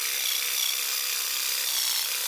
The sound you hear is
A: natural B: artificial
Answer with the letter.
A